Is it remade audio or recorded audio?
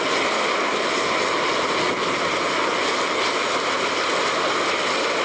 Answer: recorded